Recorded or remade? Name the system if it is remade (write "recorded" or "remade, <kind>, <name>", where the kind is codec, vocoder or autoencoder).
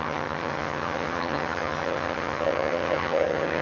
remade, vocoder, HiFi-GAN